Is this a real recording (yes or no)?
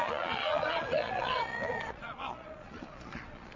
no